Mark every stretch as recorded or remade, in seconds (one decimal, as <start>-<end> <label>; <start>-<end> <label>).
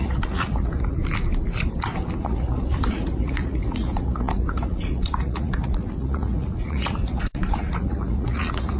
0.0-1.0 remade; 1.0-2.2 recorded; 2.2-8.8 remade